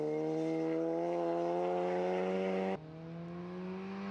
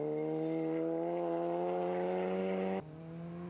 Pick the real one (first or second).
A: first